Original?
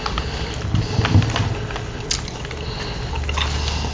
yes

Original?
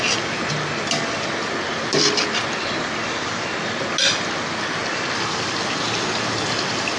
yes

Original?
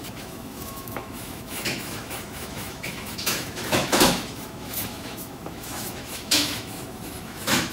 no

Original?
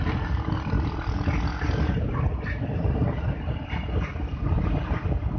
yes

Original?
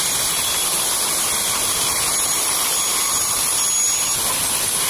yes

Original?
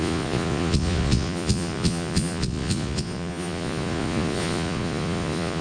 no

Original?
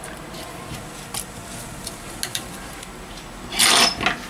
yes